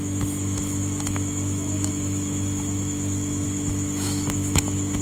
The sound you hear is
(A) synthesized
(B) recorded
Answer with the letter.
A